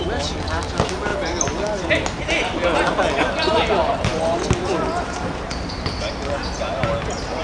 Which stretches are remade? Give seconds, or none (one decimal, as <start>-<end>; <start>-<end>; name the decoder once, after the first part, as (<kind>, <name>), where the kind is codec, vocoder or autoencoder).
none